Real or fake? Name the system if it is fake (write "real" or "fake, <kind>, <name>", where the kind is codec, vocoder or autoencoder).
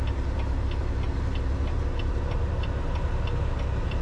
real